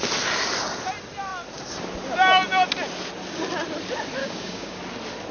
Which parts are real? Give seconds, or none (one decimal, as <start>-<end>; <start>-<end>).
0.0-4.2; 4.8-5.3